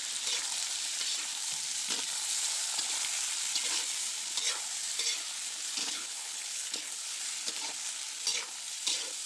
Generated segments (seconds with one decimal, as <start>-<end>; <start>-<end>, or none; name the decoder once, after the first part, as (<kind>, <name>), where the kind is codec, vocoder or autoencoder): 5.8-6.9 (codec, HILCodec)